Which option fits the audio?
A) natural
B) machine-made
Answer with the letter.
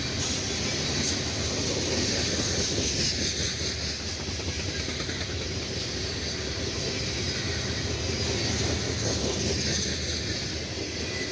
A